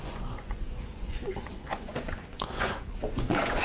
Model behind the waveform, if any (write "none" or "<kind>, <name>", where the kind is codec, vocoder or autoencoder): vocoder, Vocos